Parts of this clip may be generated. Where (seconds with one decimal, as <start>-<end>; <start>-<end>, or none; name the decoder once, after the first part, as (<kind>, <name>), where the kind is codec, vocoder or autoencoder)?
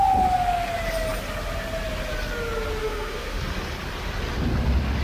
2.8-3.4 (autoencoder, DAC-VAE)